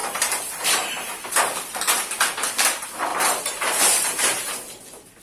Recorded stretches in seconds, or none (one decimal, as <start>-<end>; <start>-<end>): 1.1-3.1; 4.5-5.2

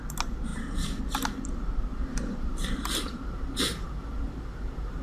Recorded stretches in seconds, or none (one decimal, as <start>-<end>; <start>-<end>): 0.0-0.5; 1.0-1.9

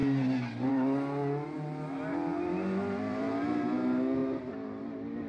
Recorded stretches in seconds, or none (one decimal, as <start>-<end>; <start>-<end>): 0.0-2.1; 3.3-5.3